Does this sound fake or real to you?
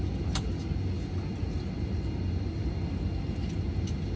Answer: real